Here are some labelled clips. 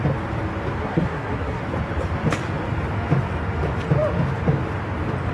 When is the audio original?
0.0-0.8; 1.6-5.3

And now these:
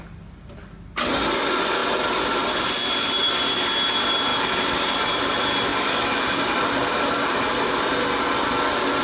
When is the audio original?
0.0-4.3; 5.2-5.7; 7.5-9.0

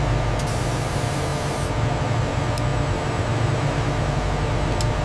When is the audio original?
0.0-5.0

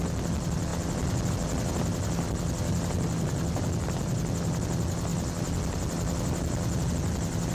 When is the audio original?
0.0-7.5

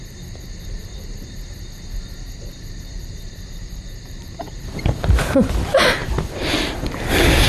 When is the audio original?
0.0-2.5; 5.3-7.5

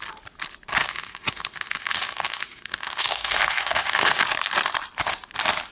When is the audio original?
0.0-0.8; 4.2-5.7

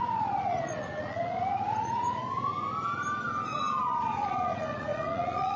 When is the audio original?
2.2-3.8

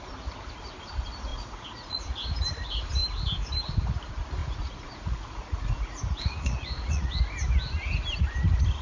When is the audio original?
0.0-1.3; 2.1-4.4; 7.2-8.8